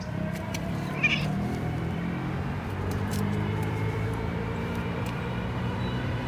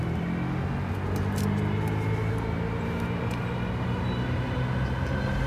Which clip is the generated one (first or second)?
first